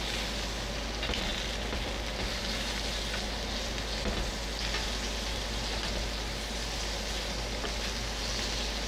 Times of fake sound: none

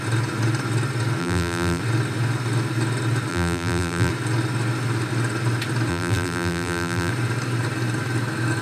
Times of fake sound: 1.2-1.8 (vocoder, BigVGAN v2); 3.3-4.1; 5.9-7.1

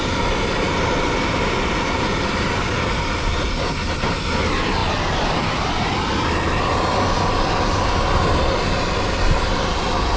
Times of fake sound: 0.0-10.2 (vocoder, BigVGAN v2)

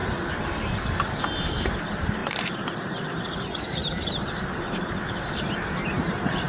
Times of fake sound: 1.4-6.5 (vocoder, BigVGAN v2)

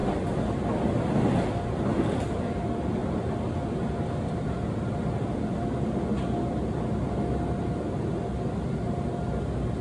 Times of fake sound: none

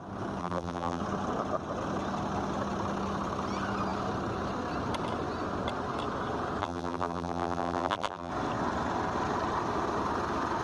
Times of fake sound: 0.4-1.0 (vocoder, BigVGAN v2); 6.6-8.3

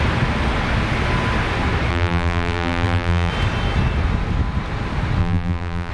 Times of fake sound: 1.9-3.3 (vocoder, BigVGAN v2); 5.2-5.9

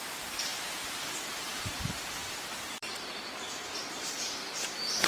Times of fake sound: 0.0-5.1 (vocoder, BigVGAN v2)